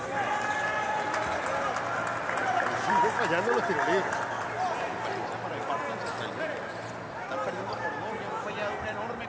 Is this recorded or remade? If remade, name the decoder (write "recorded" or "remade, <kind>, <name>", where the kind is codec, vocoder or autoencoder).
recorded